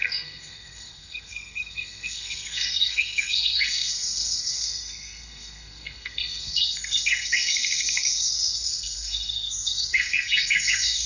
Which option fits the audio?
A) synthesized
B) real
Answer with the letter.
A